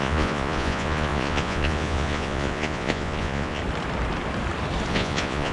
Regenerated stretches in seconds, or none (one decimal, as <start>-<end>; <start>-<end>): 0.0-3.6; 4.9-5.5